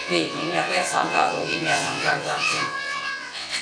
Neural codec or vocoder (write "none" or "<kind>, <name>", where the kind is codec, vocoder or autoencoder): vocoder, WaveNeXt